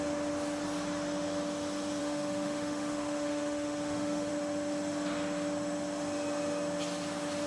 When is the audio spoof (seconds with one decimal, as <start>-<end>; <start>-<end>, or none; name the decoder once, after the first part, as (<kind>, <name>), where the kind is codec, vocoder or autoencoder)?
2.0-4.3 (autoencoder, DAC-VAE)